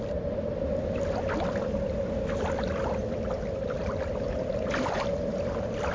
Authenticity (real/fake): real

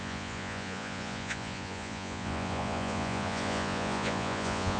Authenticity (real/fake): fake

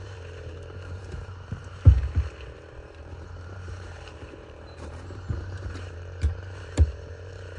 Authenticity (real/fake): fake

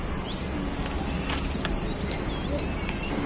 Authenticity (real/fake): real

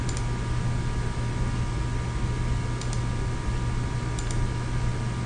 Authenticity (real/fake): real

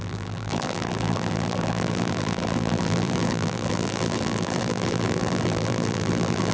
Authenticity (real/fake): fake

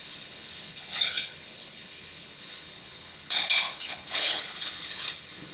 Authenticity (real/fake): fake